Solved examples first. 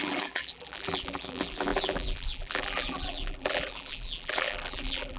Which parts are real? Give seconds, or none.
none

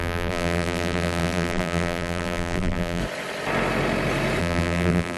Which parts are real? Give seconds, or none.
3.0-4.4

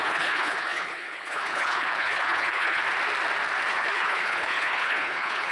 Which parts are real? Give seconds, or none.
2.8-3.7

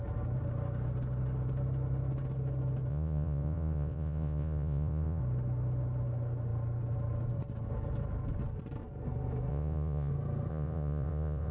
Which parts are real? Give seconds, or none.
0.0-2.9; 5.2-9.5; 10.1-10.5

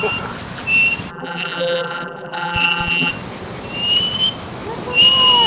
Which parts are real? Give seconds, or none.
0.0-1.1; 3.1-5.5

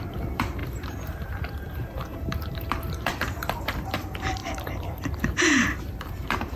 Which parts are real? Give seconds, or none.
none

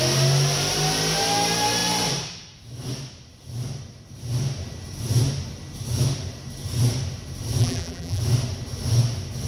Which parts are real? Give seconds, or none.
0.0-7.6; 8.2-9.5

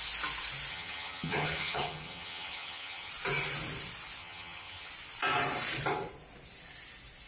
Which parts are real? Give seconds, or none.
0.0-0.7; 3.1-4.2; 4.9-7.3